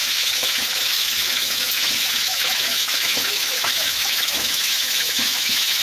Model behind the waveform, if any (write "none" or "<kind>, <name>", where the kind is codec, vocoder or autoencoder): autoencoder, DAC-VAE